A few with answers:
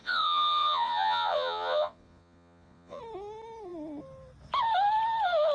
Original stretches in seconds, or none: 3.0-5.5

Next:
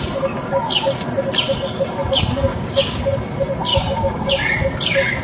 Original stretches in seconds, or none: 0.0-2.5; 3.0-3.7; 4.3-5.2

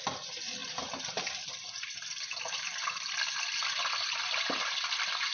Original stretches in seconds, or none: 0.0-5.3

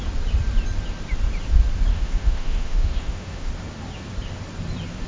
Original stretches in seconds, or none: 0.0-1.9; 3.5-5.1

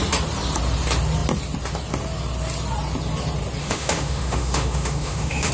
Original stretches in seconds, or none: 0.0-3.6

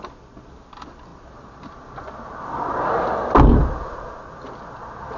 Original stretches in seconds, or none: 0.0-5.2

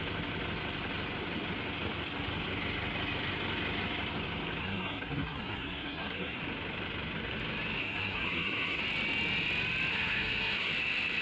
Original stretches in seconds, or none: 0.0-4.6; 6.4-7.8; 8.8-9.9; 10.7-11.2